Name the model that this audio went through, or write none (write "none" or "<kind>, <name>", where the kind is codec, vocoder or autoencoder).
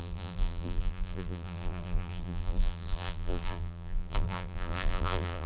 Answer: vocoder, BigVGAN v2